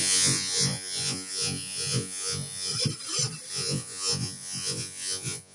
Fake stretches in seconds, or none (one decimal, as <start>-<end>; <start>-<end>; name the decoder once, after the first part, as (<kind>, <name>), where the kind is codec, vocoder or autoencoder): 0.0-2.7 (vocoder, Vocos); 3.5-5.5